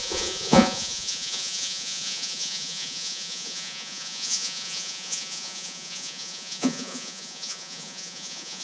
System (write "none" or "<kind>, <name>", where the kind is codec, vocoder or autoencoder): vocoder, Vocos